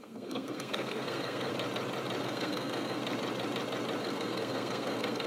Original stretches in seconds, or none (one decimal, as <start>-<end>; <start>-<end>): 1.5-2.2; 3.0-4.0